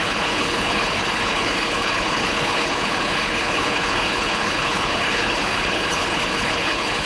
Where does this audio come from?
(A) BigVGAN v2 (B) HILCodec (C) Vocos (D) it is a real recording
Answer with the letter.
B